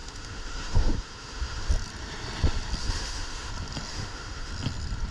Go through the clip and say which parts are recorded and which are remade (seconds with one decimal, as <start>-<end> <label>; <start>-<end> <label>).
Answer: 0.0-1.7 remade; 1.7-2.8 recorded; 2.8-3.5 remade; 3.5-3.9 recorded; 3.9-4.5 remade; 4.5-5.1 recorded